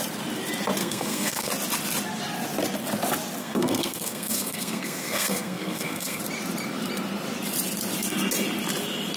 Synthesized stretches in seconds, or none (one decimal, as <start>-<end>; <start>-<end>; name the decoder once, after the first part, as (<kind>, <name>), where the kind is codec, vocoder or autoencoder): 0.8-1.5 (codec, SNAC); 3.4-6.2